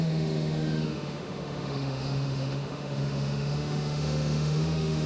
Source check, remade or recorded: remade